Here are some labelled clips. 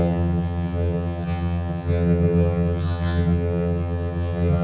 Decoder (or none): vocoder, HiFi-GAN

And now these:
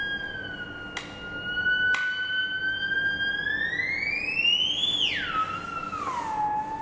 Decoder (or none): none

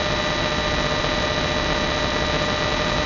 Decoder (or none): none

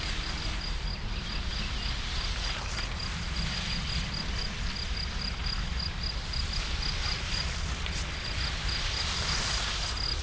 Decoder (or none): none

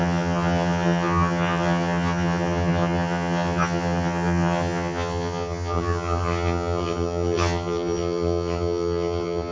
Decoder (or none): vocoder, HiFi-GAN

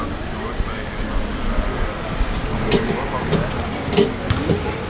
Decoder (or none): none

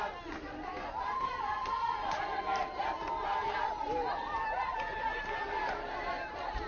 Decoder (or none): none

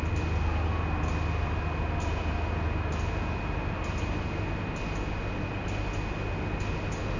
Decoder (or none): none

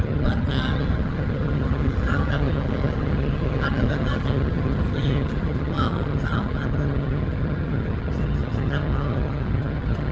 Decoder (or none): vocoder, HiFi-GAN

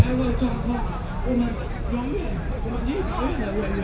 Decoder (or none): none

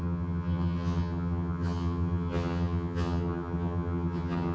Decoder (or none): vocoder, HiFi-GAN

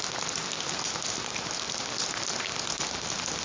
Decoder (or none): none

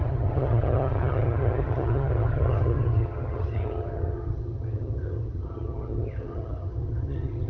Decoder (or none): vocoder, HiFi-GAN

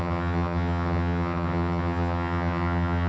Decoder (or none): vocoder, HiFi-GAN